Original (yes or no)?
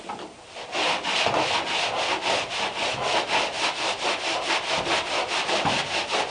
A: yes